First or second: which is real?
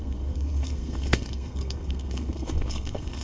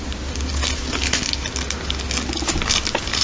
second